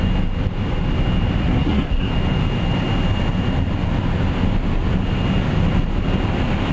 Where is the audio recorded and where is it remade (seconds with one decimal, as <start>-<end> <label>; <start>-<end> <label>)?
0.0-1.4 recorded; 1.4-2.1 remade; 2.1-6.7 recorded